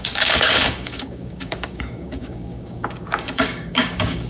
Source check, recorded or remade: remade